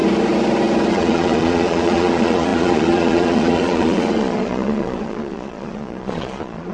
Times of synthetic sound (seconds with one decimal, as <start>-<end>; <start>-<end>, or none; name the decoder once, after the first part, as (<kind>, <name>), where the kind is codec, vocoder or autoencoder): 0.9-6.7 (vocoder, Vocos)